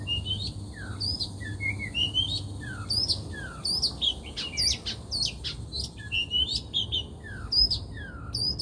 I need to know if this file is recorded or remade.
recorded